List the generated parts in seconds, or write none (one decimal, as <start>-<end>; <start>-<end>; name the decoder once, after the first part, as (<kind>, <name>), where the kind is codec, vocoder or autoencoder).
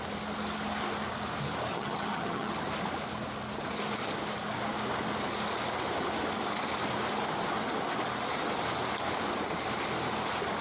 1.7-2.5 (vocoder, HiFi-GAN)